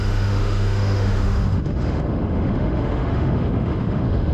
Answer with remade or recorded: remade